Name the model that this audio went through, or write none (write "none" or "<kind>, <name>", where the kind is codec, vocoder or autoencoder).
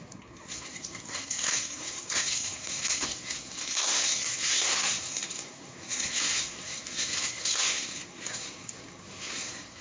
codec, SNAC